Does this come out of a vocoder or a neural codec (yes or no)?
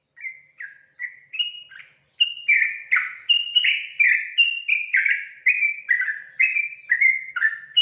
no